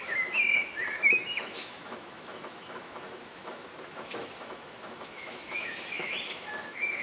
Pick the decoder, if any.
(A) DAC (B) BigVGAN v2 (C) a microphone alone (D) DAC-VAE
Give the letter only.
D